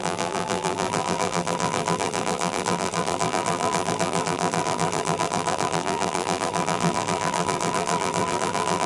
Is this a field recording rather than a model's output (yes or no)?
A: no